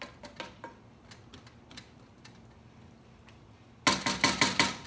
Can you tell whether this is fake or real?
real